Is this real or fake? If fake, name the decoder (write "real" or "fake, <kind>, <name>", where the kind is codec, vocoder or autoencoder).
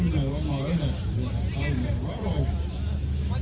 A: real